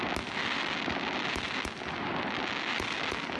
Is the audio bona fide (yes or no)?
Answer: yes